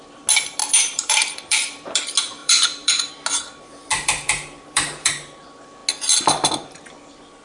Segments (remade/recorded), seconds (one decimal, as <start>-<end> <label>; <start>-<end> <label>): 0.0-0.6 recorded; 0.6-2.0 remade; 2.0-2.4 recorded; 2.4-3.1 remade; 3.1-3.9 recorded; 3.9-5.1 remade; 5.1-7.4 recorded